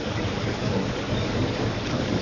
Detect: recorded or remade remade